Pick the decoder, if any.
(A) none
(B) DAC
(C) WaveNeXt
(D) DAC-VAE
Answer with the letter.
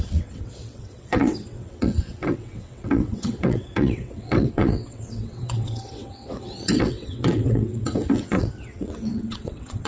C